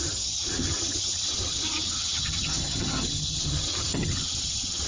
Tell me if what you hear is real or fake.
fake